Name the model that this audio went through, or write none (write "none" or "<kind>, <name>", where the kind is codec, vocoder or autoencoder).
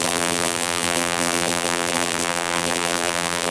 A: vocoder, BigVGAN v2